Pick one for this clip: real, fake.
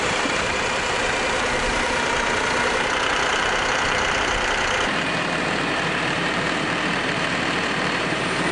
fake